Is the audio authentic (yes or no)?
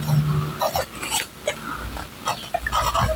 yes